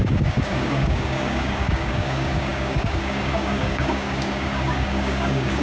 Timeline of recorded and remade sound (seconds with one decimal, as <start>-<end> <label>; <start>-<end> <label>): 0.0-5.6 remade